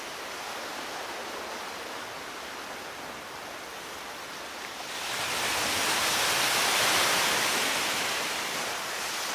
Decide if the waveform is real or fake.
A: real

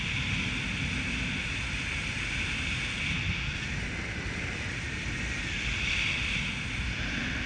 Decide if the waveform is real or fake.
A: real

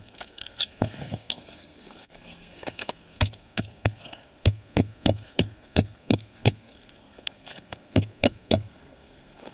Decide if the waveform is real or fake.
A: fake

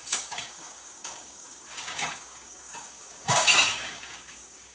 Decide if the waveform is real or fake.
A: fake